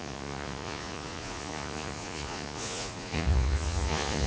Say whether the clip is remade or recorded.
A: remade